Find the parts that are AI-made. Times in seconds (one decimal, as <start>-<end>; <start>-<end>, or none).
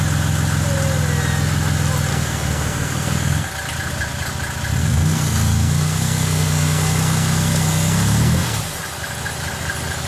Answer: 2.1-3.5; 4.8-8.6